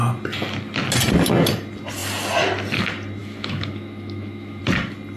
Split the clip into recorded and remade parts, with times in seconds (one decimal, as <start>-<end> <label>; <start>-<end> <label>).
0.0-3.2 recorded; 3.2-4.6 remade; 4.6-5.2 recorded

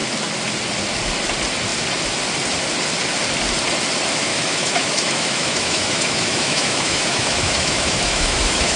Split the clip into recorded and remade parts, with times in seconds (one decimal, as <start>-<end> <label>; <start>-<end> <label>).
0.0-4.3 recorded; 4.3-8.8 remade